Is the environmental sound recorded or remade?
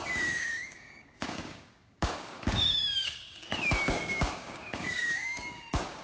remade